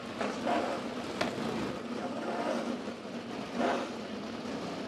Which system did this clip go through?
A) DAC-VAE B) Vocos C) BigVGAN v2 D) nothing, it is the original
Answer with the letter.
D